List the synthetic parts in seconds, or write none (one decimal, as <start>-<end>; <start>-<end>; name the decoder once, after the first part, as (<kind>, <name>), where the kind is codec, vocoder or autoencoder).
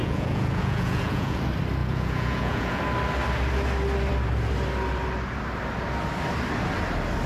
0.0-1.4 (vocoder, Vocos); 1.8-2.8